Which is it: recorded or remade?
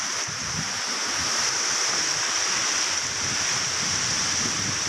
recorded